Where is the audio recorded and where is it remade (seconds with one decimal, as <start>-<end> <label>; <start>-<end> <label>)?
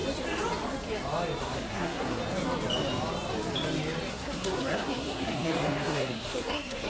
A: 0.0-1.4 recorded; 1.4-2.2 remade; 2.2-4.1 recorded; 4.1-6.9 remade